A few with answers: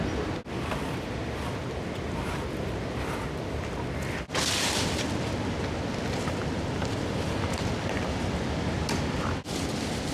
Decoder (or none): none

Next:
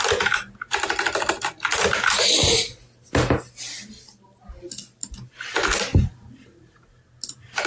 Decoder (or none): none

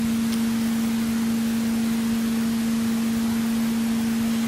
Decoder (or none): none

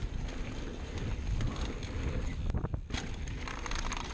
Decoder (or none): none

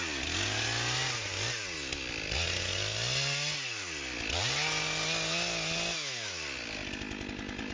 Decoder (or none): none